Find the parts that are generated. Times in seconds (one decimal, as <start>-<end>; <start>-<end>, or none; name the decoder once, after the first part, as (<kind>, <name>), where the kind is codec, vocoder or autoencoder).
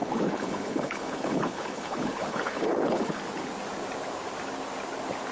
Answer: 0.0-3.2 (codec, HILCodec)